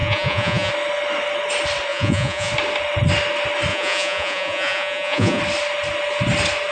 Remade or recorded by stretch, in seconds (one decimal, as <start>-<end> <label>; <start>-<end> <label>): 0.0-0.7 remade; 0.7-1.9 recorded; 1.9-2.5 remade; 2.5-3.7 recorded; 3.7-5.4 remade; 5.4-6.7 recorded